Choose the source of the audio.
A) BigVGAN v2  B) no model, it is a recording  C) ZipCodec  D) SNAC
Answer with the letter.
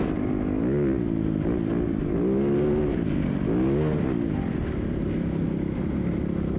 B